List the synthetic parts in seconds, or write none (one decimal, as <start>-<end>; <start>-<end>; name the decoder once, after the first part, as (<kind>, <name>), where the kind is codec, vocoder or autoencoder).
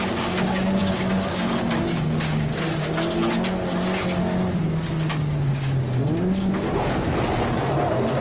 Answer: 0.0-2.7 (codec, DAC); 5.2-7.1